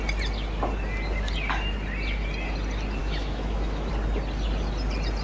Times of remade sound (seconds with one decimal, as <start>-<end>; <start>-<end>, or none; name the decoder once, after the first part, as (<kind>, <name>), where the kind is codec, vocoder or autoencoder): 3.0-3.9 (autoencoder, DAC-VAE)